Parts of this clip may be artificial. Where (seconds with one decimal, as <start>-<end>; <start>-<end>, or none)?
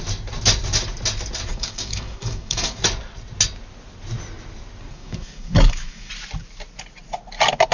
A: 1.5-2.8; 4.9-6.1